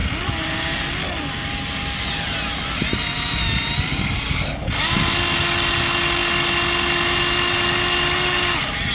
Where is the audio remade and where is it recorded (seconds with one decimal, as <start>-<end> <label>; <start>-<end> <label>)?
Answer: 0.0-8.9 recorded